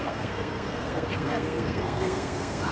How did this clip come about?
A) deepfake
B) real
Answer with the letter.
A